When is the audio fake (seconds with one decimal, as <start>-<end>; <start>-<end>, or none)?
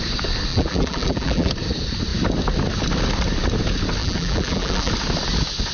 0.5-1.5; 4.0-4.9